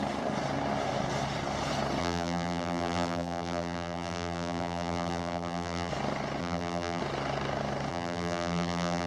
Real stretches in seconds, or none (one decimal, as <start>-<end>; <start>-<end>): 0.0-2.0; 5.9-6.4; 7.0-7.9